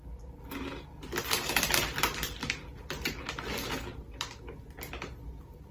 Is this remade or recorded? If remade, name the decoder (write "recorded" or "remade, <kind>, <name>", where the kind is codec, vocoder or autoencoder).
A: recorded